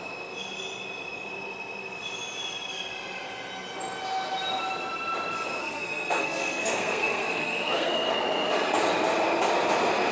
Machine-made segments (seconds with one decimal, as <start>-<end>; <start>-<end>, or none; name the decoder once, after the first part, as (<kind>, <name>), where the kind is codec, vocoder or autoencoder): 5.6-8.1 (codec, SNAC)